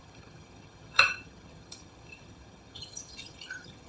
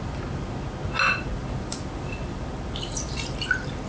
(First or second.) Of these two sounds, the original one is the second